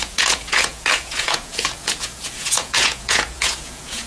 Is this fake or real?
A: fake